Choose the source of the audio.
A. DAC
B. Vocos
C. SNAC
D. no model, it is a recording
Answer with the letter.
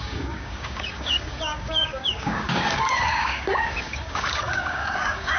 A